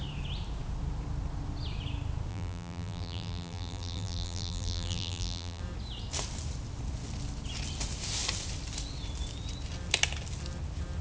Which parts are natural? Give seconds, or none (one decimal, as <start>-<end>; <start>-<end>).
0.0-2.3; 5.6-11.0